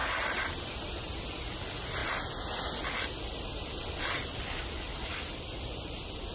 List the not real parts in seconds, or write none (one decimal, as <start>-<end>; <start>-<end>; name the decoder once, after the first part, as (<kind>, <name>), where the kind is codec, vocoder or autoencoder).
none

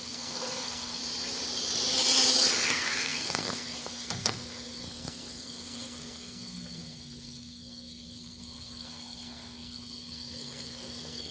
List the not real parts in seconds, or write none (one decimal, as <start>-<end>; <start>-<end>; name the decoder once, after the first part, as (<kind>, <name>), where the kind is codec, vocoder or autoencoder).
0.0-1.0 (codec, SNAC); 2.7-11.3

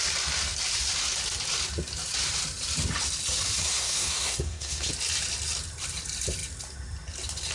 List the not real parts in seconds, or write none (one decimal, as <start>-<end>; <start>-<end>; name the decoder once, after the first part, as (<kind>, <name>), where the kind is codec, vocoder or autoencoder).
3.6-4.9 (codec, SNAC)

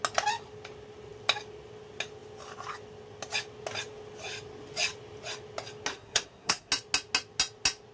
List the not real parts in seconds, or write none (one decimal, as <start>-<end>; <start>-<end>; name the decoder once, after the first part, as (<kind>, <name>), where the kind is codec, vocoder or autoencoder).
5.9-6.7 (codec, SNAC)

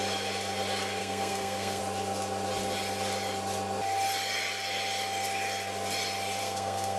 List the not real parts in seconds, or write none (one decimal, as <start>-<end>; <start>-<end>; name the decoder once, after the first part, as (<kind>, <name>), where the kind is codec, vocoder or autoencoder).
1.0-1.8 (codec, SNAC); 6.4-7.0

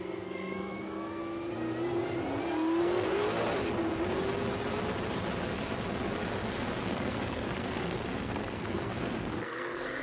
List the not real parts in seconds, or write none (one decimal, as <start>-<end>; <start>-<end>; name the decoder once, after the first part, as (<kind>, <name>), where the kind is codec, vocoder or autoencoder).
0.0-1.2 (codec, SNAC); 2.8-3.2; 6.8-10.0